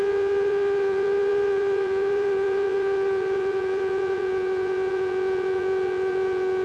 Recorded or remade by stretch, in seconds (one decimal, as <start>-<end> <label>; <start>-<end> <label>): 0.0-6.6 remade